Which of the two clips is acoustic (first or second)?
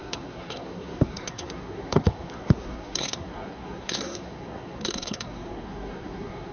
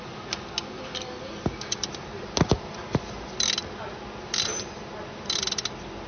second